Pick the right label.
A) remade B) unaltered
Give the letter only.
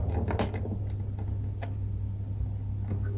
B